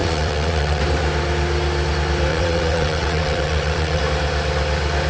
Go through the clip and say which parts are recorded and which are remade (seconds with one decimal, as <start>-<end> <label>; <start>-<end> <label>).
0.0-0.8 remade; 0.8-2.3 recorded; 2.3-4.0 remade; 4.0-5.1 recorded